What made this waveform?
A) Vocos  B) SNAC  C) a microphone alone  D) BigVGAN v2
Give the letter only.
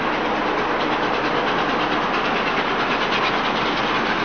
C